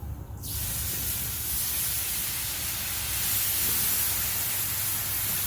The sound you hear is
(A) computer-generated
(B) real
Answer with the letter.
B